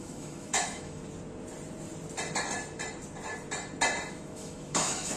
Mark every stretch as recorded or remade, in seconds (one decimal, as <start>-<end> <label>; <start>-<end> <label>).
0.0-1.0 remade; 1.0-4.1 recorded; 4.1-5.2 remade